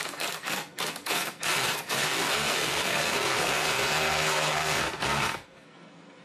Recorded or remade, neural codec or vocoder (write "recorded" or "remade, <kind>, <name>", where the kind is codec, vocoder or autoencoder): remade, codec, SNAC